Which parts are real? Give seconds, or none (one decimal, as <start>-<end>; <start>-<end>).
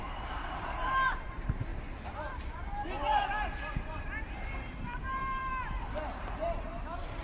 1.7-3.6; 5.4-6.1